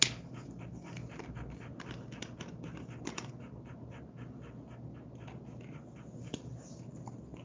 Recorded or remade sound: recorded